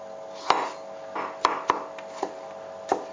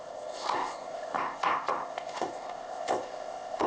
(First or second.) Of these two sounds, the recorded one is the first